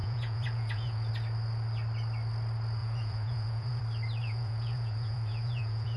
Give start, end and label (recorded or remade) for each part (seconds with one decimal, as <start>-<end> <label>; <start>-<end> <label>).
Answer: 0.0-1.1 remade; 1.1-2.8 recorded; 2.8-3.8 remade; 3.8-4.2 recorded; 4.2-6.0 remade